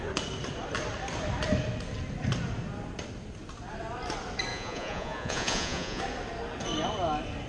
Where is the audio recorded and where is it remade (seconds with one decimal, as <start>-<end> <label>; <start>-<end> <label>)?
0.0-4.5 recorded; 4.5-6.0 remade; 6.0-7.5 recorded